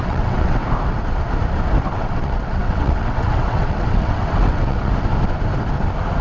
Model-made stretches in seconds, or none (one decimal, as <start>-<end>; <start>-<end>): 0.0-0.6; 1.9-4.9